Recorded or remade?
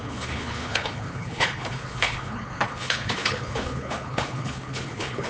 remade